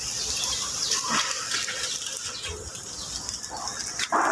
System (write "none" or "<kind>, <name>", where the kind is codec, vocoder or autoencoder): vocoder, BigVGAN v2